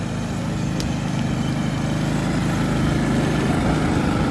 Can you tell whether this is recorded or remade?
recorded